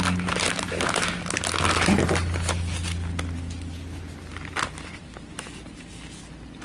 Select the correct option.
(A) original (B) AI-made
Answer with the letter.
A